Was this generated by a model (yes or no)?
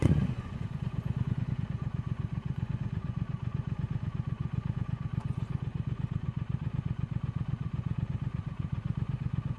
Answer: yes